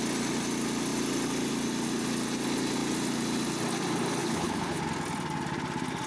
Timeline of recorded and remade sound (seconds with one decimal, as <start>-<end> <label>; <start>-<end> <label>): 0.0-4.2 recorded; 4.2-4.8 remade; 4.8-6.1 recorded